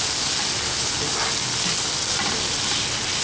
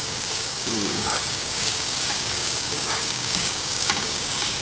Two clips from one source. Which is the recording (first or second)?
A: first